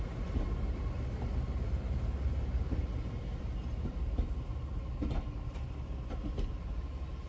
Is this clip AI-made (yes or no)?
no